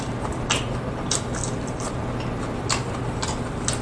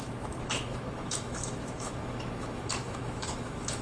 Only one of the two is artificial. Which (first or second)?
second